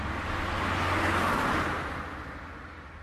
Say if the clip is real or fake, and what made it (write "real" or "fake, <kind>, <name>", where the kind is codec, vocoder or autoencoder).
real